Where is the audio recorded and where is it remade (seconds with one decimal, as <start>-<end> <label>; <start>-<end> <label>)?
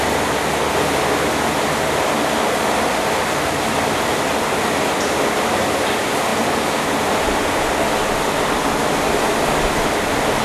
0.0-10.4 recorded